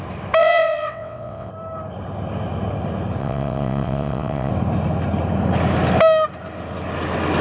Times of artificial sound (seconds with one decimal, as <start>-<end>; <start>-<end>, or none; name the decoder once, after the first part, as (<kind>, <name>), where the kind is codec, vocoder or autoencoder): 0.4-1.5 (vocoder, WaveNeXt); 3.2-4.5